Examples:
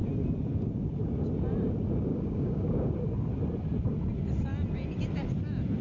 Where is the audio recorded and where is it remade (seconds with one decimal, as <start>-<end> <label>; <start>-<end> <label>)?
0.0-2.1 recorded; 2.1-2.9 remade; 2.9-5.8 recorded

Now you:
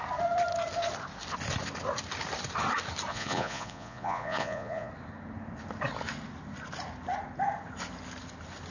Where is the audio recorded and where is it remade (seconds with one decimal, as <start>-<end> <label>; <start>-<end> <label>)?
0.0-3.1 recorded; 3.1-4.9 remade; 4.9-8.7 recorded

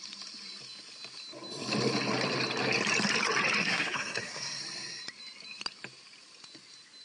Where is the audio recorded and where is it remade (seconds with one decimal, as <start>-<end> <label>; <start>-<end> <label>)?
0.0-3.6 recorded; 3.6-4.6 remade; 4.6-7.0 recorded

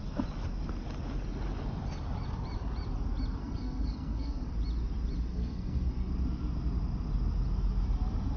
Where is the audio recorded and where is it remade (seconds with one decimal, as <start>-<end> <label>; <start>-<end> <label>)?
0.0-3.4 recorded; 3.4-4.5 remade; 4.5-5.3 recorded; 5.3-6.1 remade; 6.1-8.4 recorded

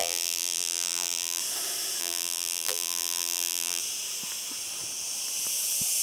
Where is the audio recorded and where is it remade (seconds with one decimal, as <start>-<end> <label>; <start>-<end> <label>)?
0.0-1.4 remade; 1.4-2.0 recorded; 2.0-3.8 remade; 3.8-6.0 recorded

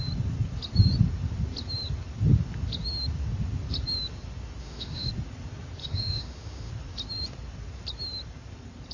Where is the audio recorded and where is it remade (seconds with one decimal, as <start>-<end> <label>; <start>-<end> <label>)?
0.0-4.6 recorded; 4.6-5.1 remade; 5.1-5.8 recorded; 5.8-6.7 remade; 6.7-8.9 recorded

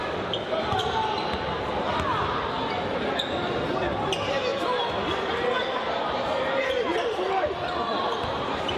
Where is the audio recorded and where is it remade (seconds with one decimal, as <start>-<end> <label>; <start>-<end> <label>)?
0.0-6.9 recorded; 6.9-7.7 remade; 7.7-8.8 recorded